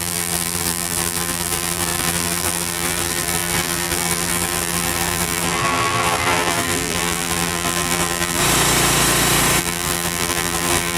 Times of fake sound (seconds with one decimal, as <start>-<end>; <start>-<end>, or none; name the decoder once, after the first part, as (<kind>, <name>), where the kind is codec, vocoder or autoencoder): 0.0-8.4 (vocoder, BigVGAN v2); 9.6-11.0